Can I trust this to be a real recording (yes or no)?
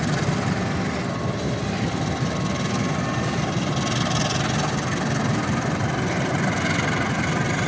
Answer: yes